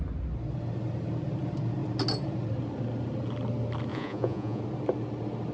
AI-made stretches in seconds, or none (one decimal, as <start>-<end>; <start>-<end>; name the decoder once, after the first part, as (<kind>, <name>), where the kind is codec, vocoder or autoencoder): 3.9-4.6 (vocoder, Vocos)